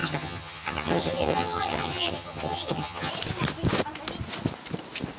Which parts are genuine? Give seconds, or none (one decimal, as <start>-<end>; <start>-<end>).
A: 3.1-5.2